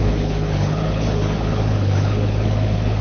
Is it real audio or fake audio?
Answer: fake